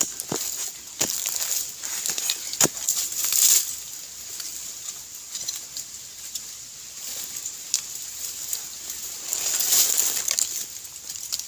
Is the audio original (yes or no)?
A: yes